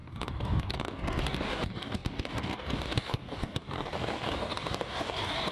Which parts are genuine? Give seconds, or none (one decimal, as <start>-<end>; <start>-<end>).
none